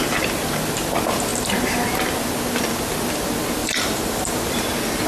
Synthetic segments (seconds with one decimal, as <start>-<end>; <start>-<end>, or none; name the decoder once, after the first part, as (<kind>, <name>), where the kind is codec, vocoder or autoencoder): 3.6-4.6 (vocoder, BigVGAN v2)